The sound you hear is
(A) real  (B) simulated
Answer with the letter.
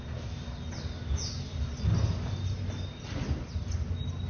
A